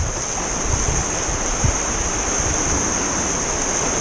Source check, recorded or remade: recorded